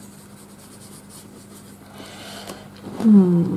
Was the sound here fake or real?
real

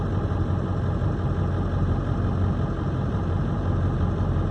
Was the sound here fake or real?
real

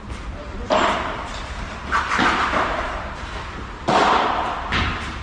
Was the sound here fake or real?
fake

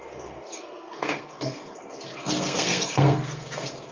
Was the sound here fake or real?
fake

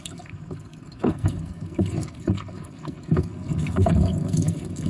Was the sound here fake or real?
fake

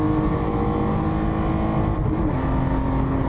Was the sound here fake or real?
real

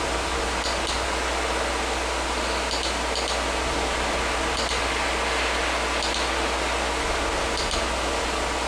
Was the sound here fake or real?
real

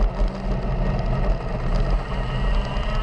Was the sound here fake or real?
real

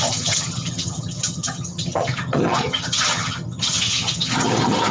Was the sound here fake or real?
fake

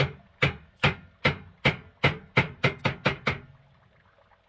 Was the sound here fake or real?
real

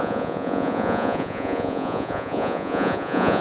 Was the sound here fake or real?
fake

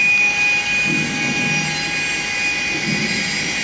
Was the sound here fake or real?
real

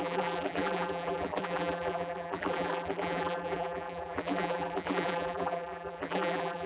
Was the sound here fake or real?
fake